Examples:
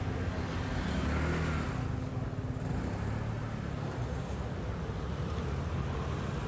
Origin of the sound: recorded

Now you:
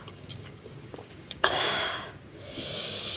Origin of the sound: remade